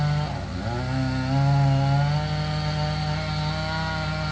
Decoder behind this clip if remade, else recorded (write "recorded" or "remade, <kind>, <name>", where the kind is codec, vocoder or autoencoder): recorded